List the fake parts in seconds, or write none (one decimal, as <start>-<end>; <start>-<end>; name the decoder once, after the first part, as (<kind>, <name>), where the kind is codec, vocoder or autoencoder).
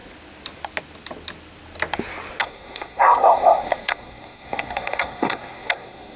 2.4-6.2 (codec, SNAC)